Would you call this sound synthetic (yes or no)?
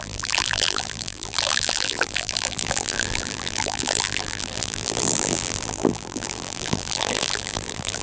yes